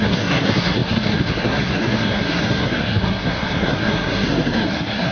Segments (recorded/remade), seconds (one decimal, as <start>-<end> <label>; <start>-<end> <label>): 0.0-5.1 remade